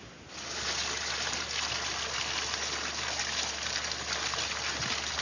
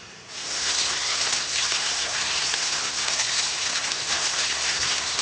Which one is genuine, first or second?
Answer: first